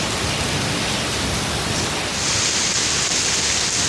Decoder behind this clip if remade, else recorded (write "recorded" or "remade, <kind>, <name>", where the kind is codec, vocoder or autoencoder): recorded